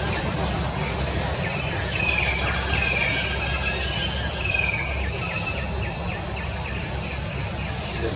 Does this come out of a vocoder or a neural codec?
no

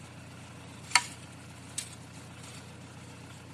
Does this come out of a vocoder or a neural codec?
no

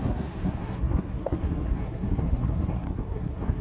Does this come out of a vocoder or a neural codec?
yes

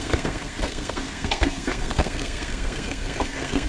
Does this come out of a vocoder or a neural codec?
yes